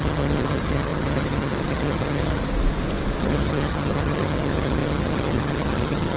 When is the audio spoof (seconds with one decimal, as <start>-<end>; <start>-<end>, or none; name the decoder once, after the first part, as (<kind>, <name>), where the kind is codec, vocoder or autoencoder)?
0.0-2.4 (vocoder, HiFi-GAN); 3.2-6.2